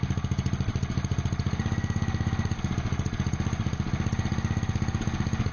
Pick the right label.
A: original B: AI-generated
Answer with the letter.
A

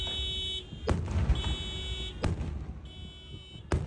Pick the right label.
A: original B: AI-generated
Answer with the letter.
A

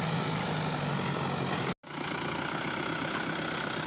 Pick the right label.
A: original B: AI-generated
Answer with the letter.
A